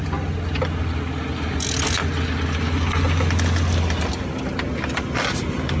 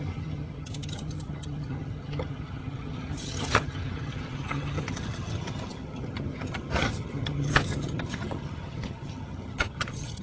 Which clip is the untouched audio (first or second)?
first